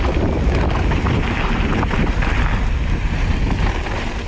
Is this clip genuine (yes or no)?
yes